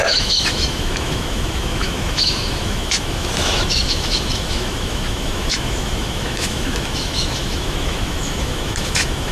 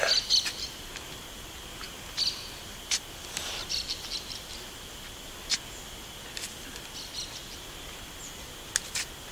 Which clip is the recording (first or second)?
second